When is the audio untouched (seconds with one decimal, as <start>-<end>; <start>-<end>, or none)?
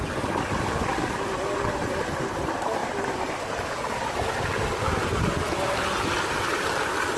0.0-7.2